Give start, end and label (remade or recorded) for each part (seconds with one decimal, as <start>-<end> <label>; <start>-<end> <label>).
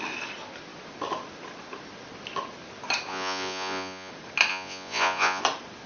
0.0-3.1 recorded; 3.1-4.1 remade; 4.1-4.5 recorded; 4.5-5.4 remade; 5.4-5.9 recorded